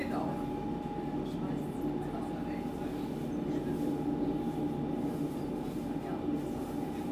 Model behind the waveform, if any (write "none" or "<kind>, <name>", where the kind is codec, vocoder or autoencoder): none